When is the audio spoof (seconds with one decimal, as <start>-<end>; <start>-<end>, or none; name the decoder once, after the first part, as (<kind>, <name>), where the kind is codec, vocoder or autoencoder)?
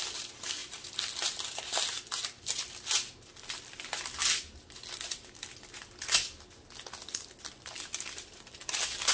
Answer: none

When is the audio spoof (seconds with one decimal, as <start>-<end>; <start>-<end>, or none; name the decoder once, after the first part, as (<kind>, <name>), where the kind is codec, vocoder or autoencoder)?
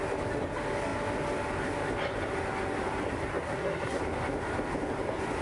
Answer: 3.3-4.0 (codec, SNAC)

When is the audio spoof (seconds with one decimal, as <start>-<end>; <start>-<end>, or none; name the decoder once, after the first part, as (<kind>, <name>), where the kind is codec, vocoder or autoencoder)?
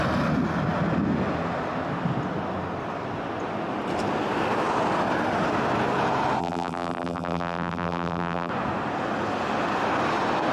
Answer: 6.4-8.5 (vocoder, BigVGAN v2)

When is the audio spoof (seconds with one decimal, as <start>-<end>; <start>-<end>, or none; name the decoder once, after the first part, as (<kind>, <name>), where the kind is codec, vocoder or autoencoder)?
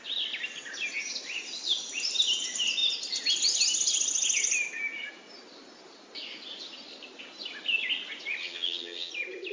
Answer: 8.4-9.1 (vocoder, HiFi-GAN)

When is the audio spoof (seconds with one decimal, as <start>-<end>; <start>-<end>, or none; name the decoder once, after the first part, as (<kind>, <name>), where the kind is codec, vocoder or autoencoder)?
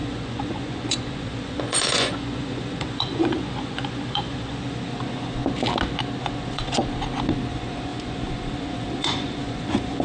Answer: 0.0-5.4 (vocoder, Vocos); 6.2-6.8; 7.5-10.0